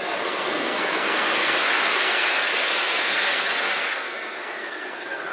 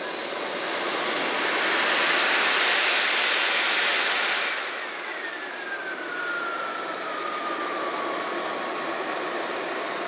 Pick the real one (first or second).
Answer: second